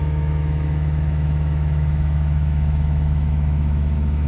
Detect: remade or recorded remade